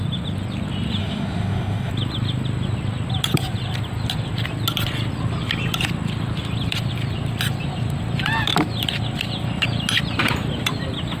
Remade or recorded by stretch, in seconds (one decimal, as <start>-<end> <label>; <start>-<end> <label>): 0.0-1.0 recorded; 1.0-1.9 remade; 1.9-11.2 recorded